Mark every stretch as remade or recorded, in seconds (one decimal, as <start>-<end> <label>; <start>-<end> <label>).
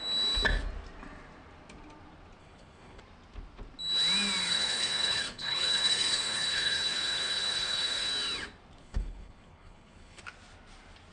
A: 0.0-2.4 recorded; 2.4-3.0 remade; 3.0-4.4 recorded; 4.4-8.1 remade; 8.1-8.8 recorded; 8.8-10.2 remade; 10.2-11.1 recorded